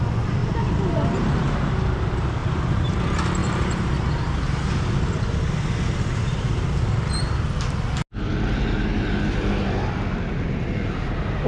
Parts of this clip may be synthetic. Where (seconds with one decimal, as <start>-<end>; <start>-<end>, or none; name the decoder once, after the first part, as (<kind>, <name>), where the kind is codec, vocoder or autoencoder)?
0.4-1.7 (vocoder, BigVGAN v2); 2.4-3.0; 3.4-5.1